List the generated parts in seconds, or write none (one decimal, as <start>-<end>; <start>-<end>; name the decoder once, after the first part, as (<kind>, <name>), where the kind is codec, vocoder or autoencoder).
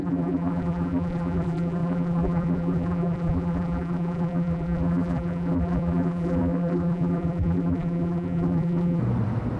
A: 0.0-9.0 (vocoder, BigVGAN v2)